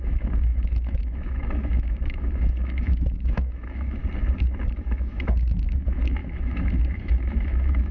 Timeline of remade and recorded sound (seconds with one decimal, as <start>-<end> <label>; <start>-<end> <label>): 0.0-4.0 remade; 4.0-4.6 recorded; 4.6-7.9 remade